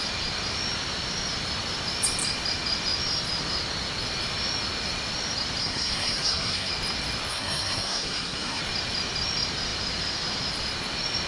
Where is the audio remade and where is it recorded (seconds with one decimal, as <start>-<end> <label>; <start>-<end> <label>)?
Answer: 0.0-5.6 recorded; 5.6-6.7 remade; 6.7-7.3 recorded; 7.3-8.6 remade; 8.6-11.3 recorded